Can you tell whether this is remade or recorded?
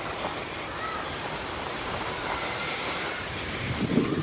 remade